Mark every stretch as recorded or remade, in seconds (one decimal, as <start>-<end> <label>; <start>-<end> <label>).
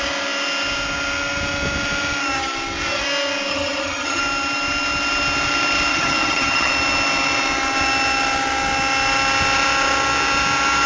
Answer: 0.0-3.5 recorded; 3.5-4.2 remade; 4.2-5.9 recorded; 5.9-6.7 remade; 6.7-10.9 recorded